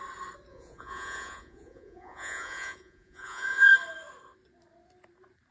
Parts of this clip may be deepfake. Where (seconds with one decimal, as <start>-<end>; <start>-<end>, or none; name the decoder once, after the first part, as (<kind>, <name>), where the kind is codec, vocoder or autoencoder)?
0.5-3.7 (vocoder, Vocos)